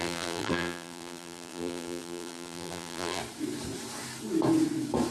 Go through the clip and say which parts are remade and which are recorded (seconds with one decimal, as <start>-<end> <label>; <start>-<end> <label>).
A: 0.0-3.2 remade; 3.2-5.1 recorded